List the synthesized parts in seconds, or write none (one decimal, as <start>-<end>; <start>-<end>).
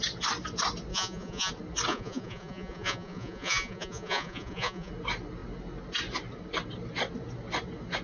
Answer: 0.9-1.5; 1.9-4.9